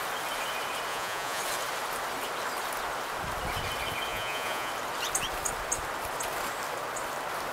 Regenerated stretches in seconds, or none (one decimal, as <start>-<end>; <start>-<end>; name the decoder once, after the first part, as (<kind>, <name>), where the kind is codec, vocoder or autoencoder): 0.9-1.4 (vocoder, Vocos); 4.1-4.7